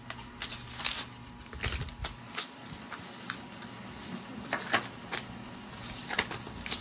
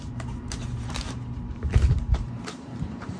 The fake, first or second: second